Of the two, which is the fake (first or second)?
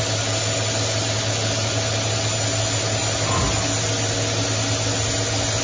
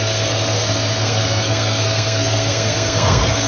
second